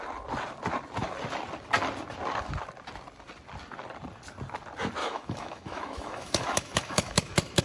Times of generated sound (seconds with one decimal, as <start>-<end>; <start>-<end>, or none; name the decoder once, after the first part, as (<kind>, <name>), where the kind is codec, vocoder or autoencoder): 5.0-7.6 (autoencoder, DAC-VAE)